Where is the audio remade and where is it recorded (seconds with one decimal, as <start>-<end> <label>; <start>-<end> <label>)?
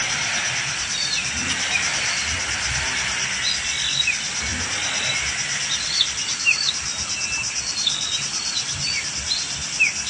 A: 0.0-10.1 recorded